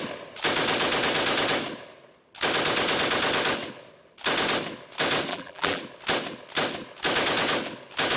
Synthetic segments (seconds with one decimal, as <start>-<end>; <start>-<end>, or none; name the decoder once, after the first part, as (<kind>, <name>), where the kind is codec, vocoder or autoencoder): 5.3-5.8 (vocoder, BigVGAN v2)